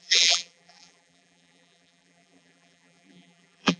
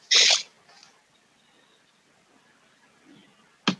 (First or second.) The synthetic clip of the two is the first